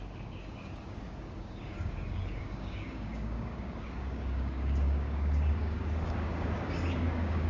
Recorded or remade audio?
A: remade